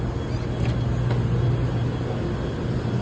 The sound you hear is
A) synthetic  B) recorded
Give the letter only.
B